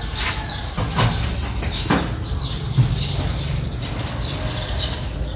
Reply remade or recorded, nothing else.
recorded